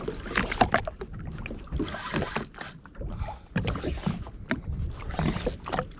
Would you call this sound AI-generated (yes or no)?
no